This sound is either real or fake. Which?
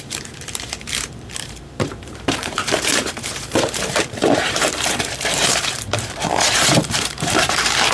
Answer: fake